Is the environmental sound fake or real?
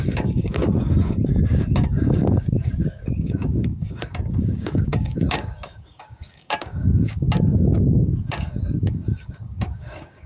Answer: fake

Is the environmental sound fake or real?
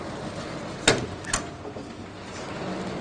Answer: real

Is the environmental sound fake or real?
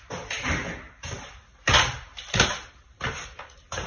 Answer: real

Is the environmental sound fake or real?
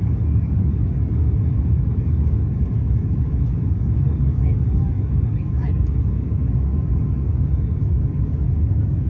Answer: fake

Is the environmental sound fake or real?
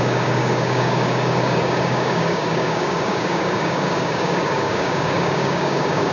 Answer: fake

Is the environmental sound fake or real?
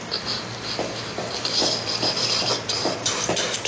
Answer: real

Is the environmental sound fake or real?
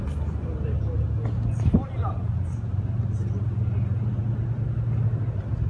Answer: real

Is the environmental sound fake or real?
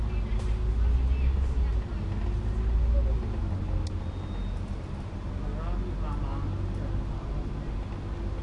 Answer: real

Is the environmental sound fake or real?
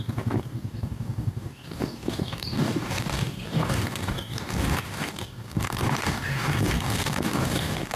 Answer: fake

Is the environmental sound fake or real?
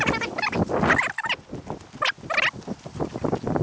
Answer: real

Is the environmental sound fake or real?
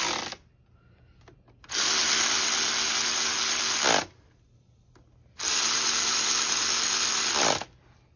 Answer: real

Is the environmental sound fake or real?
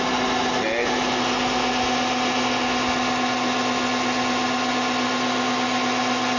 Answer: real